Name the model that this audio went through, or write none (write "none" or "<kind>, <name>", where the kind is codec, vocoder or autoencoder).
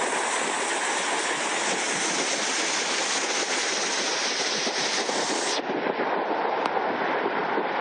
none